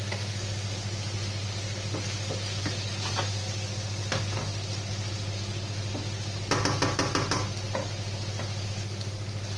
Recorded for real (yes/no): yes